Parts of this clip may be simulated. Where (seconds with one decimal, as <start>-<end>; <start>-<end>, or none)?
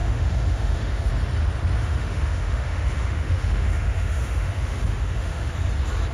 0.0-1.1; 1.8-5.5